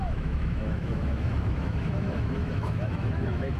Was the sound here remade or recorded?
remade